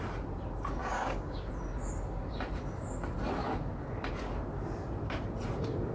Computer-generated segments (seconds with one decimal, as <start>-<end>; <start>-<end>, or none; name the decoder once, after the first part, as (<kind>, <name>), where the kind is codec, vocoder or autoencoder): 0.8-1.5 (codec, DAC)